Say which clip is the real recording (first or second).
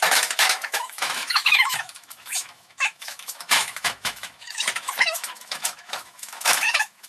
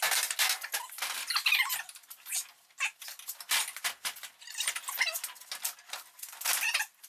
second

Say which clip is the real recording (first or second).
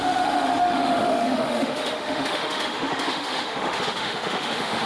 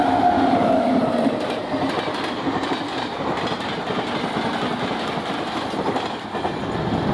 second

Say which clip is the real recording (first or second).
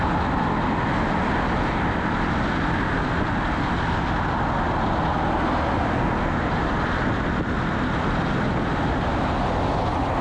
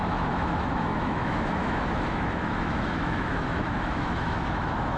first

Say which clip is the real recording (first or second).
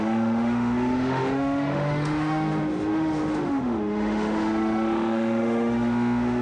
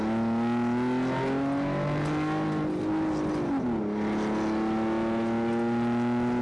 second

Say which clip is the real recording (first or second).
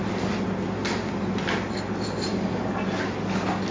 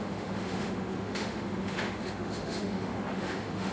first